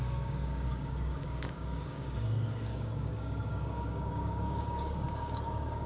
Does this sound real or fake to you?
fake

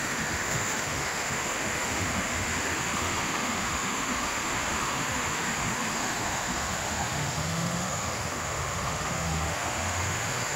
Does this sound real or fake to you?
fake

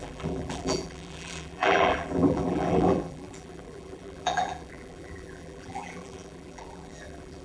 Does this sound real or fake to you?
fake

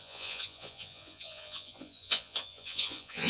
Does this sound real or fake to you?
fake